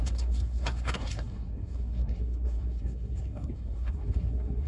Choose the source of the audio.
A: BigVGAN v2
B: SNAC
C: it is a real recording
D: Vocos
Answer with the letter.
B